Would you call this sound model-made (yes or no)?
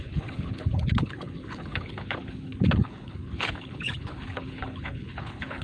yes